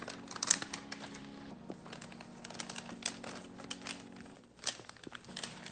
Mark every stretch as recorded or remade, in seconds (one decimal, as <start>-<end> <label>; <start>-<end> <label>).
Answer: 0.0-4.3 recorded; 4.3-5.7 remade